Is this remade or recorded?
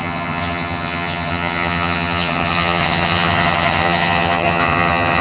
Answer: remade